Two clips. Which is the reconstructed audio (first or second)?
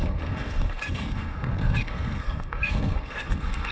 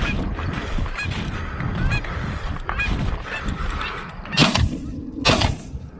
first